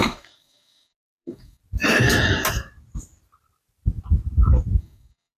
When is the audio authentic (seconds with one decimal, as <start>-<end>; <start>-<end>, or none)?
1.6-4.8